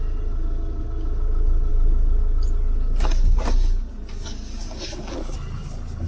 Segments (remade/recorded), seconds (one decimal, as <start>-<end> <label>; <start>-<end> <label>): 0.0-6.1 recorded